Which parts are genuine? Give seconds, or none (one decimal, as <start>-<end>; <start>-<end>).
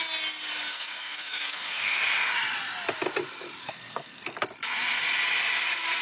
0.0-0.7; 2.0-3.6; 4.3-6.0